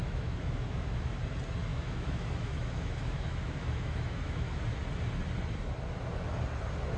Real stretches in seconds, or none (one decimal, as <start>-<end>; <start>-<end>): 1.2-1.7; 4.6-7.0